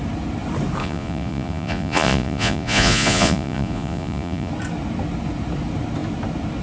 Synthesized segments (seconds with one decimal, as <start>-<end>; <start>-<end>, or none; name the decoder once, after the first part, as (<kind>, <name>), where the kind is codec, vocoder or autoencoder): 0.8-4.5 (vocoder, Vocos)